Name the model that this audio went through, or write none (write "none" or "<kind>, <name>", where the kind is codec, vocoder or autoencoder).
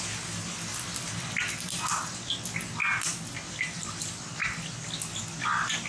none